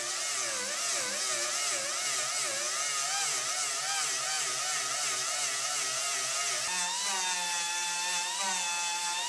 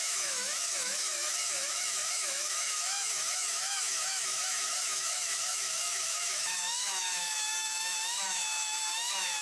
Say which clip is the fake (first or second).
second